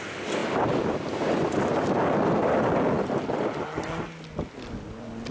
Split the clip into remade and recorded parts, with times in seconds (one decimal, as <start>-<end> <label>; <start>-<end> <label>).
0.0-5.3 recorded